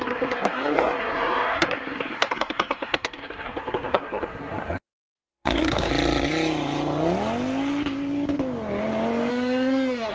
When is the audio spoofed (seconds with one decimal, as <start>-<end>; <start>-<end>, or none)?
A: 0.0-5.9; 9.3-10.1